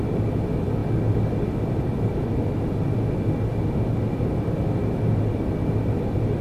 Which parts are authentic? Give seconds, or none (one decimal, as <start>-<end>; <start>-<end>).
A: 0.0-6.4